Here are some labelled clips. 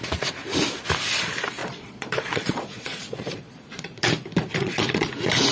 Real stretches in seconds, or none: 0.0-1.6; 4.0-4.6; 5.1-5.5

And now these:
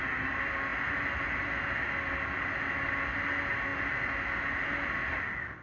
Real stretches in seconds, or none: 0.0-5.6

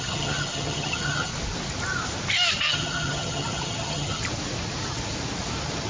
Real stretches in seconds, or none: 1.3-2.6; 4.2-5.9

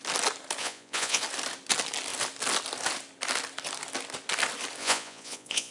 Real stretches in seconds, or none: 0.0-0.6; 1.2-4.8

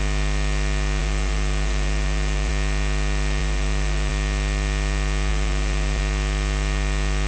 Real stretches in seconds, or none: 0.0-1.0; 2.5-3.4; 4.1-5.3; 6.0-7.3

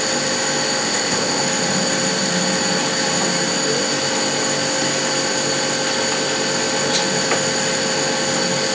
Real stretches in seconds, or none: 0.0-0.8; 1.4-8.7